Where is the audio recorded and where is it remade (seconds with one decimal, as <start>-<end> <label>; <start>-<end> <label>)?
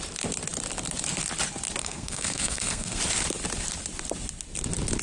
0.0-1.8 recorded; 1.8-3.0 remade; 3.0-5.0 recorded